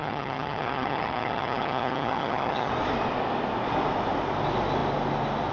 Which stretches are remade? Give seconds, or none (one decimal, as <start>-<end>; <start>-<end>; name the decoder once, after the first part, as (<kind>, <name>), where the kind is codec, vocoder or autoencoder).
0.0-2.7 (vocoder, HiFi-GAN)

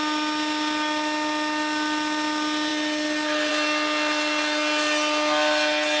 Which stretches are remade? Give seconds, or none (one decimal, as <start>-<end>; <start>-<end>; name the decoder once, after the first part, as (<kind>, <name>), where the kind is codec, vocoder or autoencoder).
none

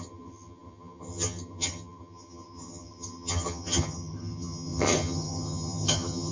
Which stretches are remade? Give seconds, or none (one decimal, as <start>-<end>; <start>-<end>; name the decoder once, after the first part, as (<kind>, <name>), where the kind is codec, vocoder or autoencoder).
0.0-6.3 (vocoder, HiFi-GAN)

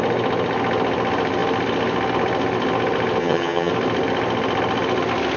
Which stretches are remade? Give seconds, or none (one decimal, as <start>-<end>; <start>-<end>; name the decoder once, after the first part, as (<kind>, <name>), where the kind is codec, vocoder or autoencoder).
3.2-3.7 (vocoder, HiFi-GAN)

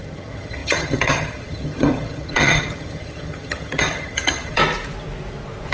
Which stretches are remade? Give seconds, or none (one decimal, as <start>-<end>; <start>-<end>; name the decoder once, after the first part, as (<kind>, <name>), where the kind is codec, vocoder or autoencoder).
0.0-4.6 (vocoder, HiFi-GAN)

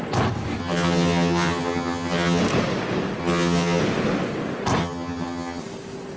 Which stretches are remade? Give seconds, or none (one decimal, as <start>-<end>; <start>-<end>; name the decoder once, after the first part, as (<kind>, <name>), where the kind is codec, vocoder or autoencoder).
0.6-2.4 (vocoder, HiFi-GAN); 3.2-3.8; 4.8-5.6